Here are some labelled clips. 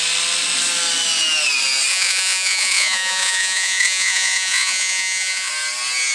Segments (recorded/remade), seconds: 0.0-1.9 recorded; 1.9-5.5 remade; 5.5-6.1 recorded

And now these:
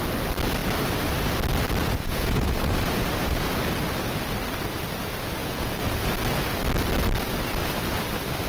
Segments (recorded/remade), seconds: 0.0-1.8 recorded; 1.8-3.6 remade; 3.6-5.4 recorded; 5.4-6.1 remade; 6.1-8.5 recorded

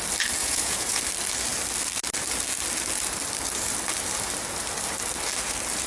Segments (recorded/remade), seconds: 0.0-0.4 recorded; 0.4-1.0 remade; 1.0-5.9 recorded

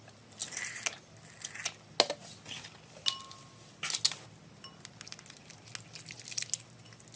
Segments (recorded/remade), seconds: 0.0-7.2 recorded

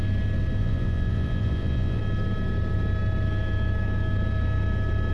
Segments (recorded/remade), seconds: 0.0-0.6 recorded; 0.6-2.0 remade; 2.0-5.1 recorded

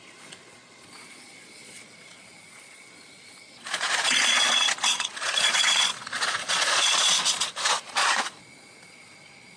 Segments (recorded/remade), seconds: 0.0-9.6 remade

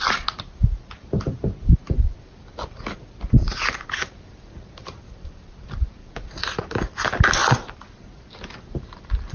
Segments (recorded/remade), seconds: 0.0-6.0 recorded; 6.0-6.6 remade; 6.6-9.3 recorded

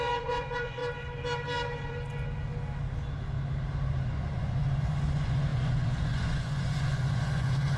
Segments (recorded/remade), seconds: 0.0-0.8 remade; 0.8-3.9 recorded; 3.9-7.8 remade